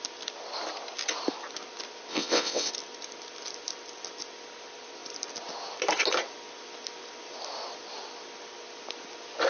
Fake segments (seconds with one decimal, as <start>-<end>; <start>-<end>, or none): 2.1-2.7